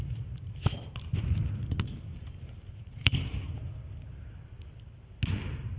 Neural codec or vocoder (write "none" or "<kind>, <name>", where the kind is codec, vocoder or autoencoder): none